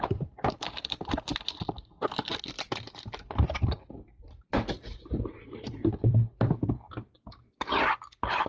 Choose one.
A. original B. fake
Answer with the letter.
B